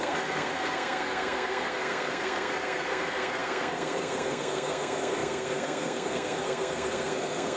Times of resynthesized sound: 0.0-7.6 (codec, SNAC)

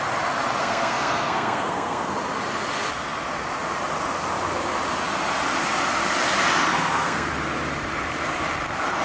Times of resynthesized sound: 0.6-2.1 (codec, SNAC); 6.7-7.3

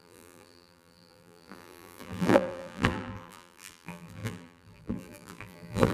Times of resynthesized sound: 0.0-5.9 (vocoder, BigVGAN v2)

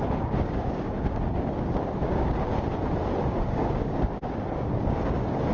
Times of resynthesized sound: 0.0-2.5 (codec, DAC); 3.2-5.5